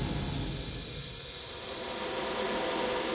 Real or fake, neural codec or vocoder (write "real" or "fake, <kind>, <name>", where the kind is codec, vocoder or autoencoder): real